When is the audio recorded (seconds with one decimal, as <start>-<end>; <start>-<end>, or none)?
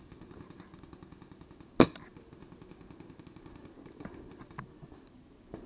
0.0-5.7